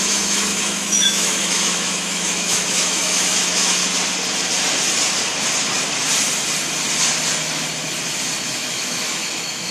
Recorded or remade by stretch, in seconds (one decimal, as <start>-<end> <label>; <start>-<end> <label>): 0.0-3.8 remade; 3.8-8.4 recorded; 8.4-9.7 remade